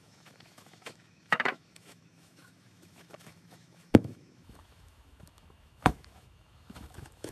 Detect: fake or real fake